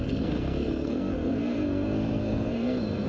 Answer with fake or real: fake